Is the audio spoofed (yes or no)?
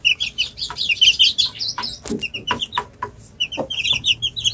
no